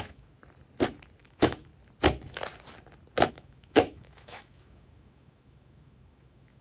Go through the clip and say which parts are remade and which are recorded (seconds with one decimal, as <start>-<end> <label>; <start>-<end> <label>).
0.0-0.4 remade; 0.4-1.2 recorded; 1.2-1.7 remade; 1.7-3.3 recorded; 3.3-6.6 remade